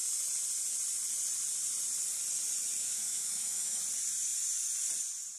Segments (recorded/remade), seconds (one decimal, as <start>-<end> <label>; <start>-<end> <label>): 0.0-2.8 recorded; 2.8-3.8 remade; 3.8-5.4 recorded